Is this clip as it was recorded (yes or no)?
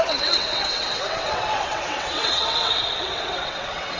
no